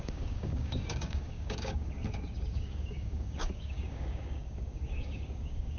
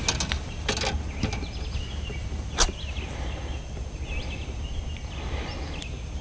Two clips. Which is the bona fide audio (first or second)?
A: second